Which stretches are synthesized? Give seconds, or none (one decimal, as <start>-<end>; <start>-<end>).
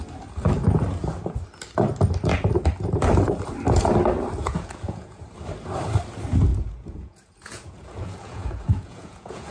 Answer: 4.4-5.2; 6.5-9.5